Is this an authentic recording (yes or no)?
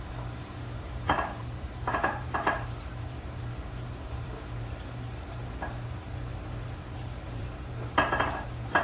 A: no